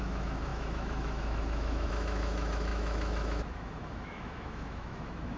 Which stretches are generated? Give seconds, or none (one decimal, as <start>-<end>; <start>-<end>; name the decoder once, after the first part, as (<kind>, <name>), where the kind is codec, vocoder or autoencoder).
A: 0.0-5.4 (autoencoder, DAC-VAE)

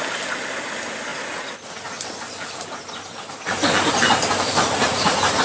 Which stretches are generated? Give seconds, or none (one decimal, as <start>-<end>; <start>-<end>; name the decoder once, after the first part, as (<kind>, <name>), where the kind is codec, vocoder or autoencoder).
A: 4.8-5.4 (vocoder, Vocos)

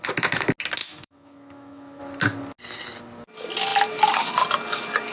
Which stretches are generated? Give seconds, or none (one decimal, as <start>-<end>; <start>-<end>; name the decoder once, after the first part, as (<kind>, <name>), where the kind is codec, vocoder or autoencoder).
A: 0.8-2.0 (autoencoder, DAC-VAE)

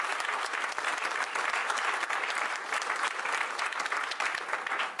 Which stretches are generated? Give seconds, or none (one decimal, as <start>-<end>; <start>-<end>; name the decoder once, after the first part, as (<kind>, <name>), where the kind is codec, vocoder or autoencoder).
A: none

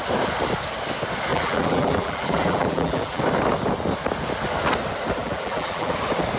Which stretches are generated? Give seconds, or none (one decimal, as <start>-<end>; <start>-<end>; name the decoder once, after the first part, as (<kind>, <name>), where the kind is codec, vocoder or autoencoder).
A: 1.3-3.2 (vocoder, BigVGAN v2); 5.2-5.9

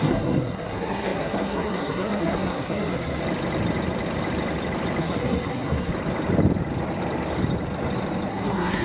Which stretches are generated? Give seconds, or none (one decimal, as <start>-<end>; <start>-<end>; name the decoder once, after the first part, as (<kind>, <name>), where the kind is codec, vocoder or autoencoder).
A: 0.0-3.2 (codec, SNAC); 5.0-5.9; 8.3-8.8

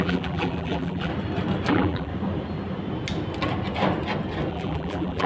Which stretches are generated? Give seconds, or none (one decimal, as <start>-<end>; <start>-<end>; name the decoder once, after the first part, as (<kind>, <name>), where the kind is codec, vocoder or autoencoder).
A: 0.0-1.1 (vocoder, BigVGAN v2); 1.7-2.1; 4.5-5.3

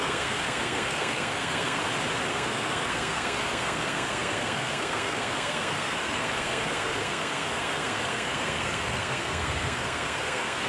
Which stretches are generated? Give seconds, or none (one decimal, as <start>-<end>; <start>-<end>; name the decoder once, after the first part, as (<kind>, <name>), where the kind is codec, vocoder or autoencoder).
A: 0.0-1.8 (codec, SNAC); 2.3-10.7